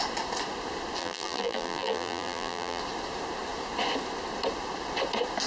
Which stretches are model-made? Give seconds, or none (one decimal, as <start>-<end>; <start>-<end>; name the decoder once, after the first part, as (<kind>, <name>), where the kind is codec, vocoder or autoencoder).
1.0-2.8 (vocoder, BigVGAN v2)